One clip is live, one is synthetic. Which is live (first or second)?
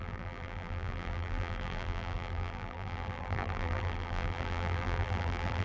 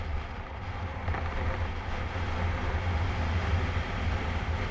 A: second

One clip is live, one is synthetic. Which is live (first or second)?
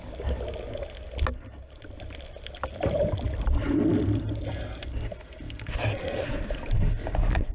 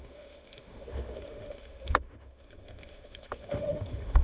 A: first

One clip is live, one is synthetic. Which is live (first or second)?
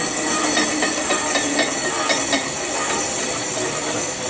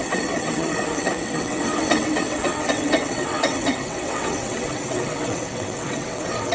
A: first